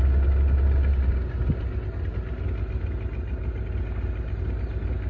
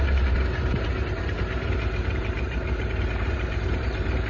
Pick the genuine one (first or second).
first